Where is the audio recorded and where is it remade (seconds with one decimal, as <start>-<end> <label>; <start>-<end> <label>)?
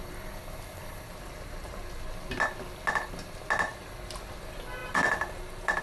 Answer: 0.0-0.4 recorded; 0.4-1.8 remade; 1.8-4.8 recorded; 4.8-5.8 remade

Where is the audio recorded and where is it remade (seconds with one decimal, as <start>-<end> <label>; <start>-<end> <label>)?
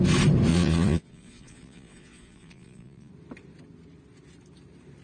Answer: 0.0-0.5 recorded; 0.5-3.1 remade; 3.1-5.0 recorded